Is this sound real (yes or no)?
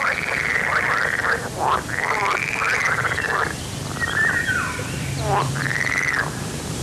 no